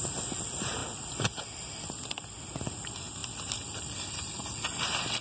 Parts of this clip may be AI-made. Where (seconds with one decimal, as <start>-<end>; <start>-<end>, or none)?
none